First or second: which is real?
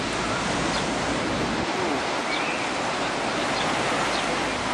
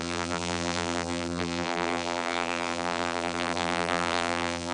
first